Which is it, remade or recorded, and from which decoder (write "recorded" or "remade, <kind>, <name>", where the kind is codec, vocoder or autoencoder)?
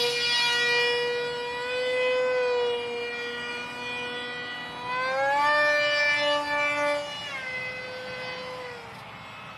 recorded